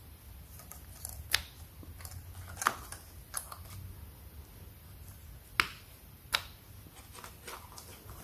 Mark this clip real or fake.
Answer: real